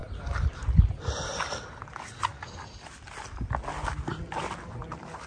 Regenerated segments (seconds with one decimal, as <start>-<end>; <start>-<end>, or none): none